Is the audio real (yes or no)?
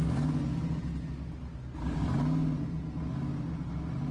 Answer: yes